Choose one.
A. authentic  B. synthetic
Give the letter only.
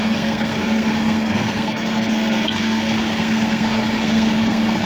B